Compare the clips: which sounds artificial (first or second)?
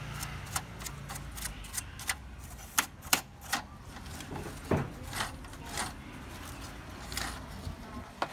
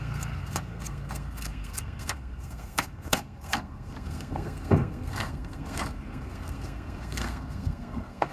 second